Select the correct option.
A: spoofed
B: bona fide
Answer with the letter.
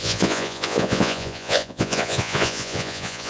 A